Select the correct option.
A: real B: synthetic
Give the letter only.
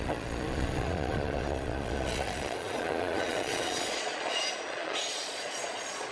B